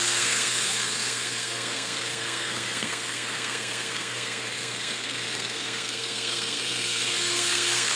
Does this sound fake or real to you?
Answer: fake